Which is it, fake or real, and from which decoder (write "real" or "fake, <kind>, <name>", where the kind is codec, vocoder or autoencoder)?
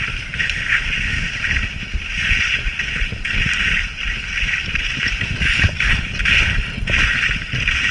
real